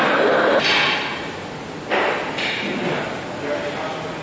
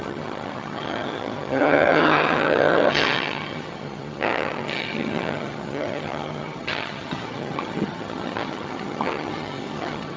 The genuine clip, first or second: first